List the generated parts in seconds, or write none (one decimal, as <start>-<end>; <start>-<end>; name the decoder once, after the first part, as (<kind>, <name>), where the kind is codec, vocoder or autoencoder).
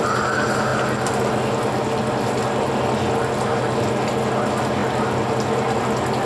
none